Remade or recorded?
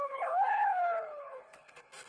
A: remade